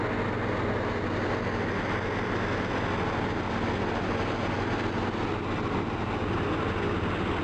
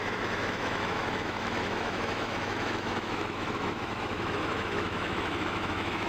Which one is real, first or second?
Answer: first